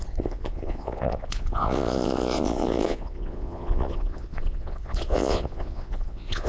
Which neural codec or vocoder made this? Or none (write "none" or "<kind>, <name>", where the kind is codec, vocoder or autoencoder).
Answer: vocoder, Vocos